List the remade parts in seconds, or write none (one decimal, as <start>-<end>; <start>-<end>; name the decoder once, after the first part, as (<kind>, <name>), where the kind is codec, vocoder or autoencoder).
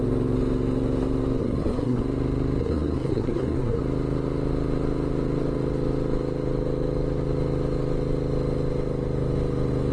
1.4-2.0 (codec, SNAC); 2.6-3.8